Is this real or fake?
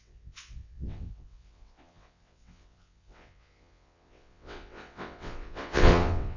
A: fake